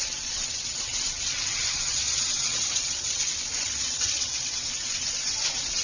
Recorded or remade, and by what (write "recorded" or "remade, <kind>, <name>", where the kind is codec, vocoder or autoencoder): remade, vocoder, WaveNeXt